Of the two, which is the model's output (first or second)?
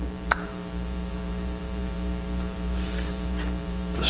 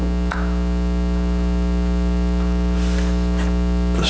first